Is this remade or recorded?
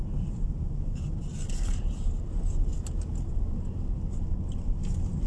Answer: recorded